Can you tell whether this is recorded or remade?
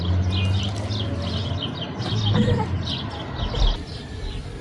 recorded